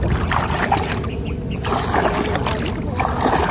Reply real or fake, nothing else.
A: real